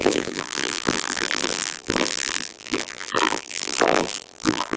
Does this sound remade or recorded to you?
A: remade